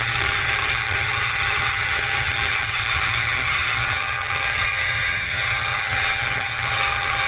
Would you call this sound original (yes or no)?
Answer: no